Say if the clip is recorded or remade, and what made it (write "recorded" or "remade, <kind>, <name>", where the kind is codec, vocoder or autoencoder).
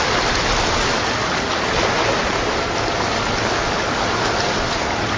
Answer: recorded